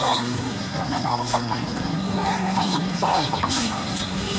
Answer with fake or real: fake